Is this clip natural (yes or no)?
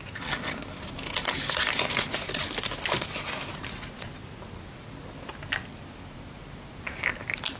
yes